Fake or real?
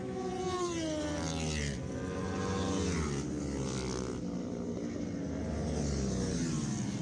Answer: real